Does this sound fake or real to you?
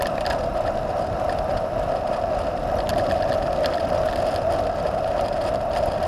real